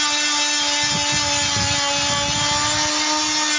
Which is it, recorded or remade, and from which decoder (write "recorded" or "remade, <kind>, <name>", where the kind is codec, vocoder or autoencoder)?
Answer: recorded